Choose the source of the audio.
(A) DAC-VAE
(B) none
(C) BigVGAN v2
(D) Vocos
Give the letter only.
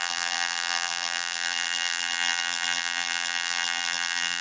C